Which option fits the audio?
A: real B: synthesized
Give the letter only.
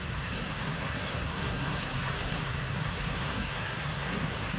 B